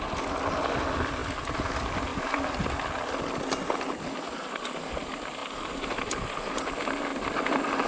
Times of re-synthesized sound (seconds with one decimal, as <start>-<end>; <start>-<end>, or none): none